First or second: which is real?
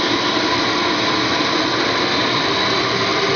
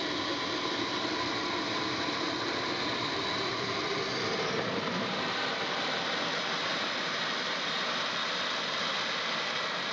first